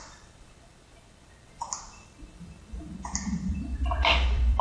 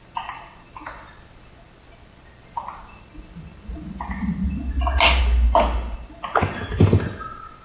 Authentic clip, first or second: second